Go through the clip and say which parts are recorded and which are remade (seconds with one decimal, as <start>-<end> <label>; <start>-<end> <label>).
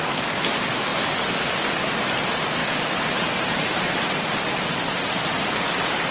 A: 0.0-6.1 recorded